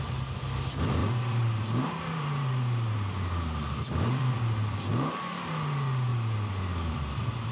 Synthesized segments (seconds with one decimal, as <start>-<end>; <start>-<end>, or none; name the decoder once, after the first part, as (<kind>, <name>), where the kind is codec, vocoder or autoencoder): 1.0-5.5 (vocoder, BigVGAN v2)